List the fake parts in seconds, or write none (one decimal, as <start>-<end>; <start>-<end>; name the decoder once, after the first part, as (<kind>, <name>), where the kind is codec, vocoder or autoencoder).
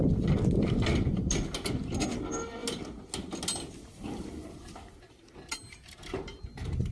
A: none